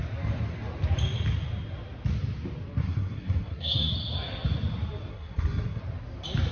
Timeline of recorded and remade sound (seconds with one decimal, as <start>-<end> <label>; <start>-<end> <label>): 0.0-2.8 recorded; 2.8-3.9 remade; 3.9-5.1 recorded; 5.1-5.8 remade; 5.8-6.5 recorded